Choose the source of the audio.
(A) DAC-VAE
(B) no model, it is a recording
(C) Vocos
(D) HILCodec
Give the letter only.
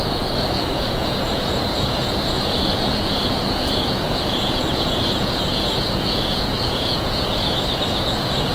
C